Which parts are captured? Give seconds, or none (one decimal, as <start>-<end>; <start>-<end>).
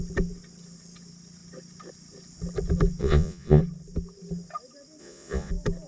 0.0-3.0; 3.6-5.0; 5.5-5.9